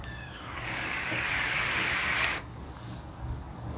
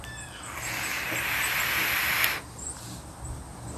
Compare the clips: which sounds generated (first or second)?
first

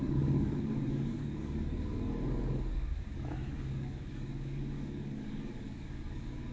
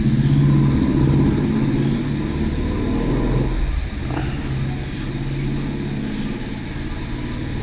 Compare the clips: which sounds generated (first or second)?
first